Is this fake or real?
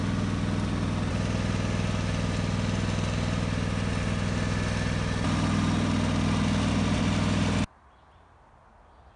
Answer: real